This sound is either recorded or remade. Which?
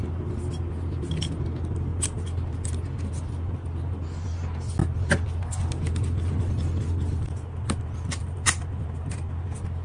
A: recorded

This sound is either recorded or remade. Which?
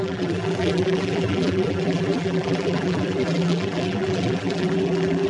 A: remade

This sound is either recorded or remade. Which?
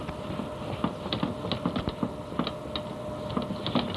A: recorded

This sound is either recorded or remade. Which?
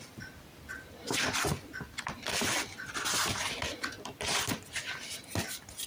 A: recorded